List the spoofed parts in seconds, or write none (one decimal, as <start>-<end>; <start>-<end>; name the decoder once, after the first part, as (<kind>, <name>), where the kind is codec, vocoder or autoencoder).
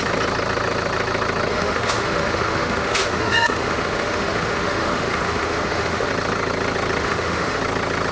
1.5-6.1 (autoencoder, DAC-VAE); 7.0-7.6